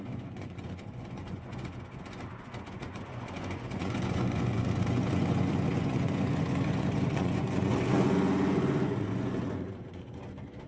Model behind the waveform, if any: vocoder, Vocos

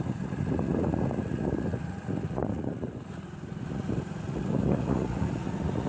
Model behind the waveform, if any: vocoder, Vocos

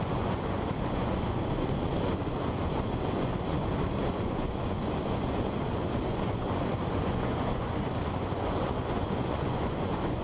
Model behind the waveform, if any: vocoder, Vocos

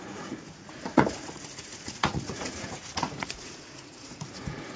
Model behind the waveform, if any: vocoder, Vocos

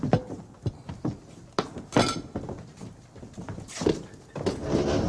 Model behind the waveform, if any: none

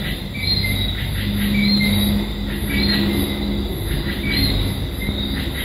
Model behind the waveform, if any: none